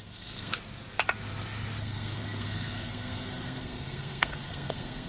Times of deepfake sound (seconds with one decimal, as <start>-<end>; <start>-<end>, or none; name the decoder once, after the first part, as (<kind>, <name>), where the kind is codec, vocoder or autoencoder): 0.0-0.5 (codec, SNAC); 1.8-5.1